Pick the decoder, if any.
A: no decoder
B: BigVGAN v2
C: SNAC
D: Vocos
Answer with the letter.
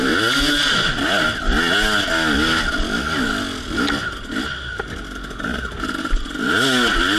A